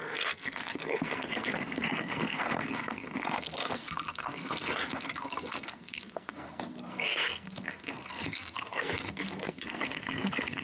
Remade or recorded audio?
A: remade